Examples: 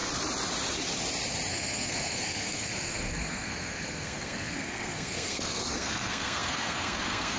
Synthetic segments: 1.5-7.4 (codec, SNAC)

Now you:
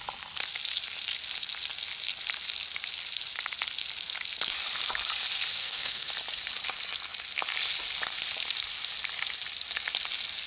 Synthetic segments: 5.5-6.1 (codec, SNAC)

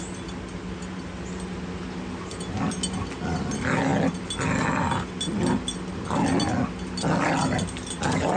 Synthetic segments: none